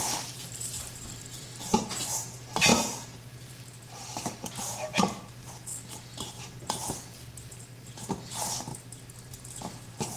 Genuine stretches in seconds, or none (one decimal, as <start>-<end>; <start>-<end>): 5.7-7.8; 8.7-9.3